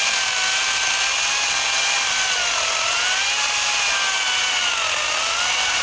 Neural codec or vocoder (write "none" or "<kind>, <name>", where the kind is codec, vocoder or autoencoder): none